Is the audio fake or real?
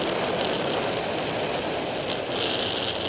real